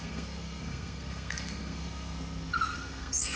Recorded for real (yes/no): no